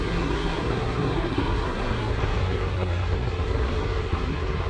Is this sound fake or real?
fake